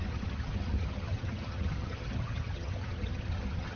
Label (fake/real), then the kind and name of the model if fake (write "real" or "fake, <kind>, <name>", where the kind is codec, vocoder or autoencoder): fake, vocoder, HiFi-GAN